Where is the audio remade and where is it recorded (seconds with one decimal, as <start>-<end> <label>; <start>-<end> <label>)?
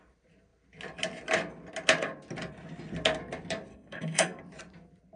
0.0-3.7 recorded; 3.7-4.4 remade; 4.4-5.2 recorded